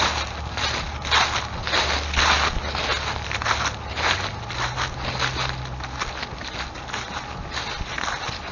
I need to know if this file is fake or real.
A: real